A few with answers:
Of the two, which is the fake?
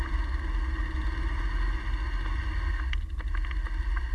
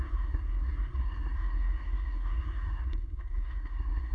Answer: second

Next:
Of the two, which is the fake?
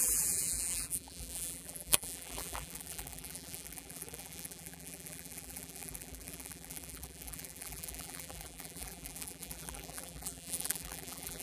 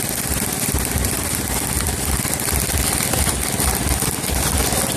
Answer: first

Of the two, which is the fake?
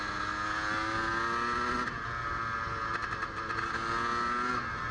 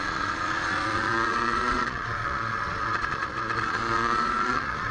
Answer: second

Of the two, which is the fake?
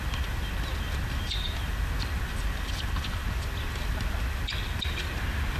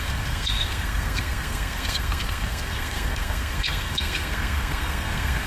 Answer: second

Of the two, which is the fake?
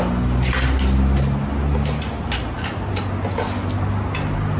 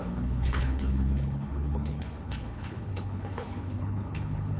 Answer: second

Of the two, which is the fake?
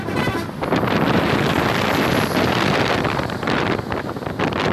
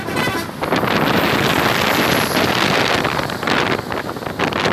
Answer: first